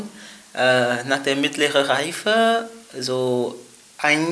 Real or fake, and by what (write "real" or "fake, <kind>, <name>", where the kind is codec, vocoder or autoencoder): real